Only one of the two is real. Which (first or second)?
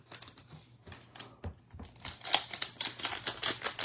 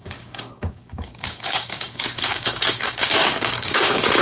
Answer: first